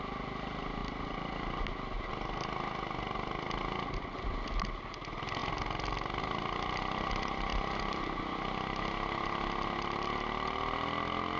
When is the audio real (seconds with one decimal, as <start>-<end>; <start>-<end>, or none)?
0.0-11.4